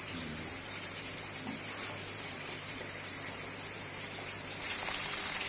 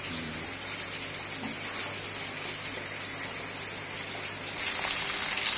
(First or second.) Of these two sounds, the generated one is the first